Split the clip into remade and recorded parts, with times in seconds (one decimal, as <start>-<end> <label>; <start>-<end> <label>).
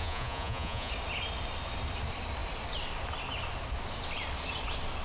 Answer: 0.0-0.9 remade; 0.9-5.0 recorded